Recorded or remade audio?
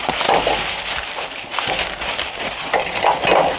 recorded